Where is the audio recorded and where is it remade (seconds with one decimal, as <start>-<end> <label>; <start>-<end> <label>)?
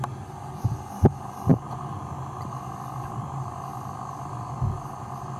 0.0-1.5 recorded; 1.5-2.7 remade; 2.7-5.4 recorded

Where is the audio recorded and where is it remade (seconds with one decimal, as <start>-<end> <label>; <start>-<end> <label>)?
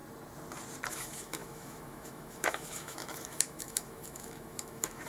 0.0-0.9 recorded; 0.9-5.1 remade